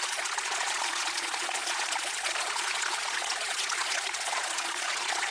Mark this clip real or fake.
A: fake